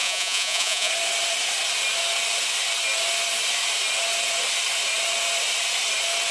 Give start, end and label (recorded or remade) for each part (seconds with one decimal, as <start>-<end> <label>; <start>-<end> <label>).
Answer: 0.0-0.9 remade; 0.9-6.3 recorded